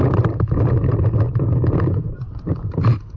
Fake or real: fake